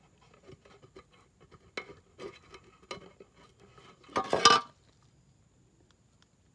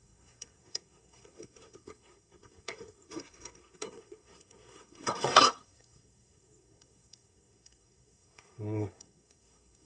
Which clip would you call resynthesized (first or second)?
second